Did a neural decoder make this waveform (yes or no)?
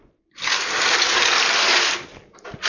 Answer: no